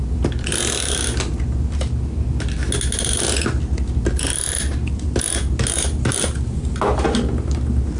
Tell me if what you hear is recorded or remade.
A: recorded